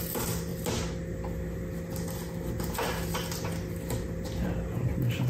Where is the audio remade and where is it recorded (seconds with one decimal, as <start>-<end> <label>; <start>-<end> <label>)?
0.0-5.3 recorded